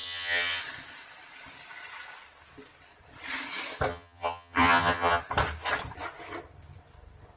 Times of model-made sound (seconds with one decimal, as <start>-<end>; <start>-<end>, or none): 0.0-0.6; 3.9-5.2